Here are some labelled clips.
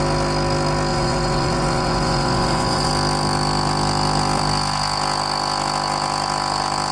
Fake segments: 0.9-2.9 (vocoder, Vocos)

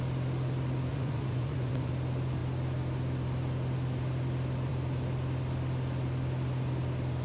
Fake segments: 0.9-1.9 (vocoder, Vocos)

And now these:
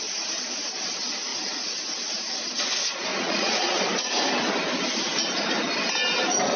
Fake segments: 1.3-1.8 (vocoder, Vocos); 3.1-3.8